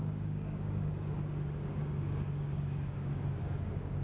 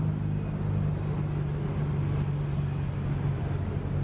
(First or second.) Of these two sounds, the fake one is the first